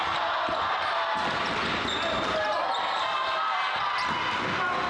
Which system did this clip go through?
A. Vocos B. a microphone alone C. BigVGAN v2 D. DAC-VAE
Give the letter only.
B